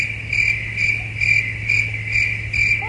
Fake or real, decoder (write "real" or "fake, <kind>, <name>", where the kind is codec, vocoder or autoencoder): real